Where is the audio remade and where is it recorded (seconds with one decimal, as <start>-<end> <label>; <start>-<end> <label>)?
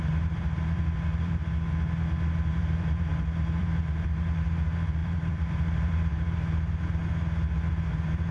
0.0-1.4 remade; 1.4-2.5 recorded; 2.5-7.0 remade; 7.0-7.7 recorded; 7.7-8.3 remade